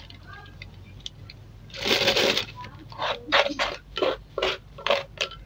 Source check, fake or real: fake